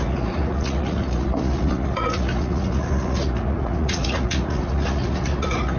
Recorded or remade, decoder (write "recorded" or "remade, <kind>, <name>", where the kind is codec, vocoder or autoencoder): remade, vocoder, Vocos